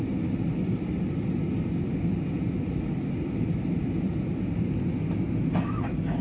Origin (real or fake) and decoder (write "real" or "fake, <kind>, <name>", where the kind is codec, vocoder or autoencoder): real